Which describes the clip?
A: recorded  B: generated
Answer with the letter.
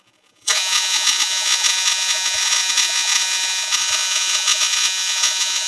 B